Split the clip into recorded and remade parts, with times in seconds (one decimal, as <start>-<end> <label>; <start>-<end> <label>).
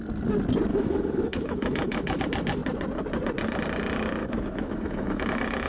0.0-0.7 recorded; 0.7-2.2 remade; 2.2-4.2 recorded; 4.2-5.7 remade